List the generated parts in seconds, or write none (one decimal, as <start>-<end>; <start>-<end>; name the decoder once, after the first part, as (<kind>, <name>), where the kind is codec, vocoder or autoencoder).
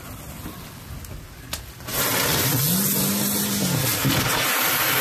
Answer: none